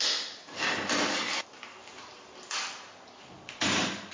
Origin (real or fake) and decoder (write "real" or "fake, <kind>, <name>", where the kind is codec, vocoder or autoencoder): real